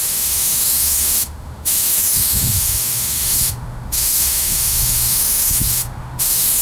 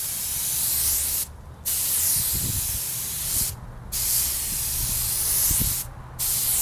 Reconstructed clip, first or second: first